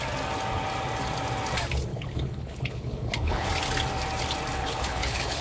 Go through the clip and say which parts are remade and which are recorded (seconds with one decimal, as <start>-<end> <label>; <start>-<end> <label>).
0.0-1.9 recorded; 1.9-3.5 remade; 3.5-4.6 recorded; 4.6-5.4 remade